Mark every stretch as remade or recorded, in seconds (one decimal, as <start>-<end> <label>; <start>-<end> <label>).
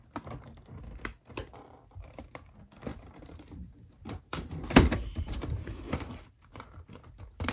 0.0-1.5 recorded; 1.5-2.2 remade; 2.2-2.9 recorded; 2.9-7.5 remade